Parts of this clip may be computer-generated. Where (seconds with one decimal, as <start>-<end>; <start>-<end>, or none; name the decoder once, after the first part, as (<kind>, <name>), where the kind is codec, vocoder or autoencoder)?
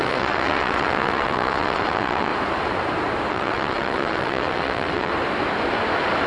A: 0.0-2.3 (vocoder, WaveNeXt); 3.3-5.1